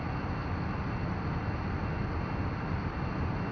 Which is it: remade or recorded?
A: recorded